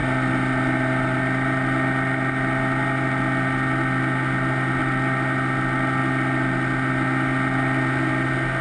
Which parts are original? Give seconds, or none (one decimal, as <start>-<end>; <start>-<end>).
0.0-8.6